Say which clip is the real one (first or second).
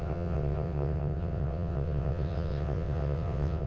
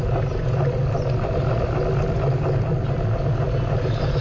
second